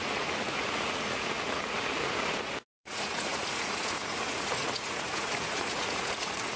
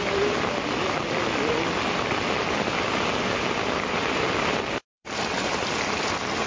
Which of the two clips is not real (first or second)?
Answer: first